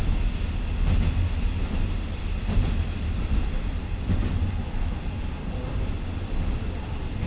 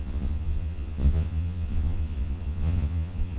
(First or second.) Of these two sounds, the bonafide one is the first